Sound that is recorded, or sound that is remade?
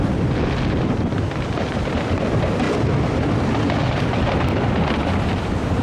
recorded